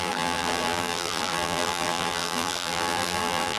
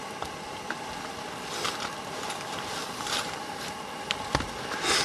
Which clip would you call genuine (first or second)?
second